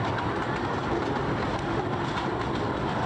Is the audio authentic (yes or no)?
yes